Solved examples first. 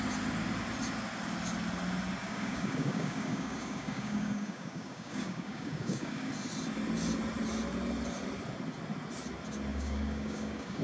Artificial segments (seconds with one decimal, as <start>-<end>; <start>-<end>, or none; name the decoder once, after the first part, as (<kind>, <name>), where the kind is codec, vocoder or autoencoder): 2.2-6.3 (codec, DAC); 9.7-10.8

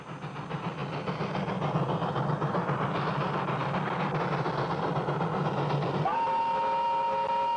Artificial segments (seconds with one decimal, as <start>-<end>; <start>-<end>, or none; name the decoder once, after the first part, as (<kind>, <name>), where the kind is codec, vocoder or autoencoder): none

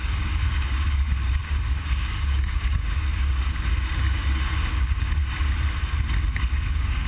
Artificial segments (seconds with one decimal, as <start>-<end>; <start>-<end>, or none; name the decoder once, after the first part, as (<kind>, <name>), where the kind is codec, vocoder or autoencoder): 0.0-5.2 (codec, DAC); 6.4-7.1

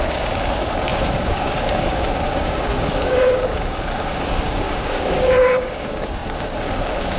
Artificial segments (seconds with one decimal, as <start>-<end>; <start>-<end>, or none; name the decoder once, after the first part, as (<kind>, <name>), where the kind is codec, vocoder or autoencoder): 0.0-7.2 (codec, DAC)

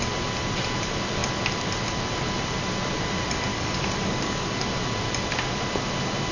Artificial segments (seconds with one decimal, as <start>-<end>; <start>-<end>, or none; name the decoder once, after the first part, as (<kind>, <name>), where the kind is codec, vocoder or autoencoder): 3.5-4.7 (codec, DAC)